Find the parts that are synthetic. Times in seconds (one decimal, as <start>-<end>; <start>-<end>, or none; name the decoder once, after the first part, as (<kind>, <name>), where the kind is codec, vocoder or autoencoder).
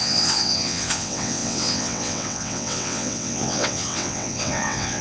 0.0-5.0 (vocoder, WaveNeXt)